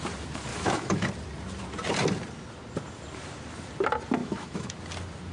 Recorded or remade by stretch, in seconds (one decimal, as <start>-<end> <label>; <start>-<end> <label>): 0.0-0.5 recorded; 0.5-1.1 remade; 1.1-4.2 recorded; 4.2-4.8 remade; 4.8-5.3 recorded

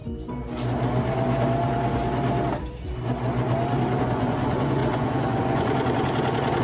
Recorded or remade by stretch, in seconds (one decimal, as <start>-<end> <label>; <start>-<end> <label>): 0.0-4.0 recorded; 4.0-6.6 remade

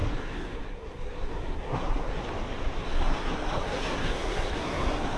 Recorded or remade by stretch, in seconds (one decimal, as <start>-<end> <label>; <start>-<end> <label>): 0.0-2.2 remade; 2.2-2.8 recorded; 2.8-5.2 remade

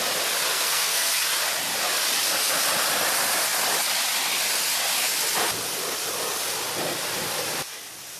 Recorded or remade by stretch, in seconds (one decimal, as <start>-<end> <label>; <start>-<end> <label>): 0.0-0.5 recorded; 0.5-1.1 remade; 1.1-8.2 recorded

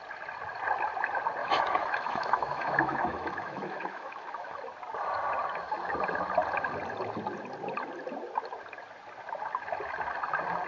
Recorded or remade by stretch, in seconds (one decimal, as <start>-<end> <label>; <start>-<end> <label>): 0.0-1.4 recorded; 1.4-4.6 remade; 4.6-10.7 recorded

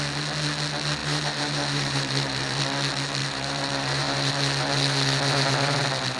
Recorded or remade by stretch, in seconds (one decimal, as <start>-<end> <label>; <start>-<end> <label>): 0.0-1.0 recorded; 1.0-2.6 remade; 2.6-3.2 recorded; 3.2-4.3 remade; 4.3-6.2 recorded